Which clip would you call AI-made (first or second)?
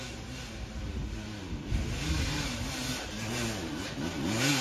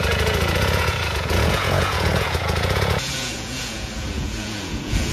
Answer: second